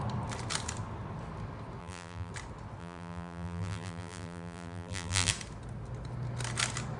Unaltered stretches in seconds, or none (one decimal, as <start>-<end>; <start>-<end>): 0.0-1.8; 2.3-2.8; 5.3-7.0